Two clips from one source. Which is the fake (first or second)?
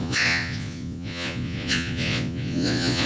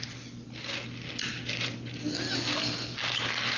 first